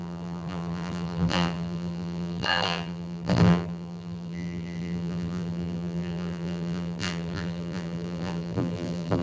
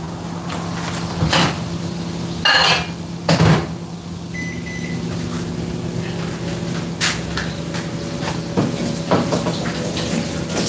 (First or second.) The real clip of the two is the second